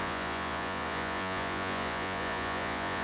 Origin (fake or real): fake